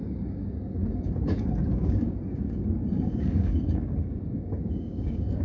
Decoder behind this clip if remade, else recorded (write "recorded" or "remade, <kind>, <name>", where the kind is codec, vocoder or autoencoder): remade, codec, DAC